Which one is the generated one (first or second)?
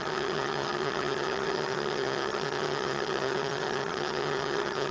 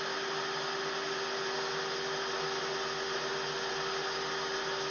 first